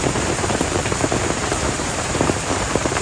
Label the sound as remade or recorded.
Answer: remade